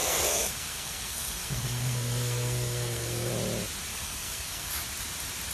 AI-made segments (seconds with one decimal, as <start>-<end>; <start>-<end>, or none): 0.0-3.3; 3.9-4.7

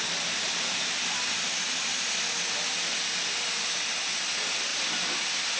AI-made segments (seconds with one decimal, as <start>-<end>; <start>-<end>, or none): none

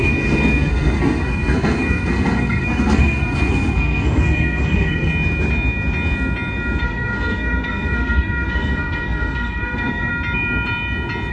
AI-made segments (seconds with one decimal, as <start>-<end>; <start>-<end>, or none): 0.0-5.1; 6.8-10.1

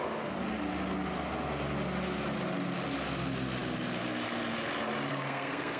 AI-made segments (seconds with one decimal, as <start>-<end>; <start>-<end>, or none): 5.1-5.8

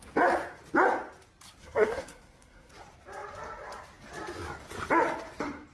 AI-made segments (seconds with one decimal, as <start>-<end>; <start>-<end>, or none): 1.6-2.7

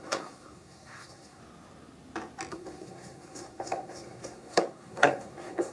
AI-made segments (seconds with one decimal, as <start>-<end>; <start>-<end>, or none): 0.0-1.4; 2.5-5.7

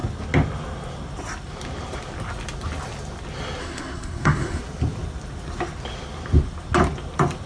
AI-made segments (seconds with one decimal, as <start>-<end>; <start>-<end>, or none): 3.6-4.6

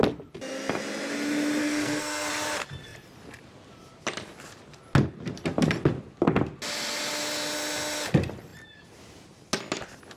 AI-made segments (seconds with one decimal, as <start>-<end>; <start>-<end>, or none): 1.6-2.3